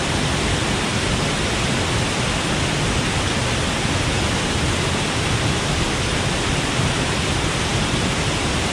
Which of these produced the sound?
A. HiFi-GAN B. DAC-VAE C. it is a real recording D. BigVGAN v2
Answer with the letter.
C